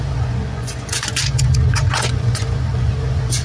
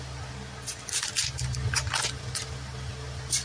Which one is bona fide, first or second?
second